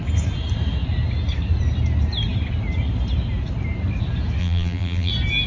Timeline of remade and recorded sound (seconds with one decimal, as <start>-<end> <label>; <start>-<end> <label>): 0.0-4.4 recorded; 4.4-5.1 remade; 5.1-5.5 recorded